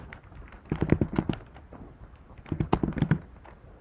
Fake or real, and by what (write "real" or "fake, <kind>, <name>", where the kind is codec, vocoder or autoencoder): real